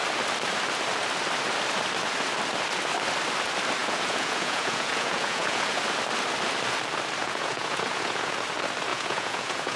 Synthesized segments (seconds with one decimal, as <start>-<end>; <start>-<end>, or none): 3.8-5.8; 7.2-8.4; 8.9-9.8